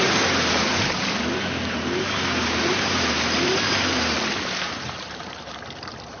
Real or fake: fake